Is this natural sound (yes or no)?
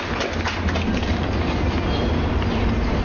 yes